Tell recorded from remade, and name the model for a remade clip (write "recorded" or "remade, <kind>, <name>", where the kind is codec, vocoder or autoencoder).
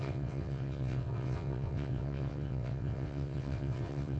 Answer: remade, vocoder, WaveNeXt